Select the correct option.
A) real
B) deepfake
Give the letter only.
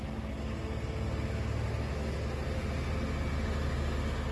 A